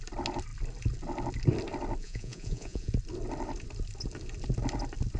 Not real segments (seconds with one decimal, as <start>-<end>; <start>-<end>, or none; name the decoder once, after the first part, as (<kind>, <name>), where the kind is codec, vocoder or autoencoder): 2.0-2.9 (vocoder, Vocos)